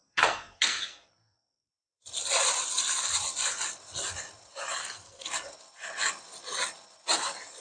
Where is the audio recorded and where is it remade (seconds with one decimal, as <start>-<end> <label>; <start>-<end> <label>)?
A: 0.0-1.7 remade; 1.7-4.8 recorded; 4.8-5.3 remade; 5.3-7.6 recorded